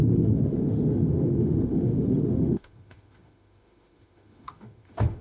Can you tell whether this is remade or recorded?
remade